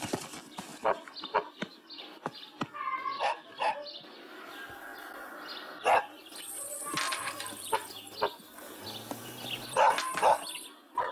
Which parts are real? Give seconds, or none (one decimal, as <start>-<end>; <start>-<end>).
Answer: 0.0-11.1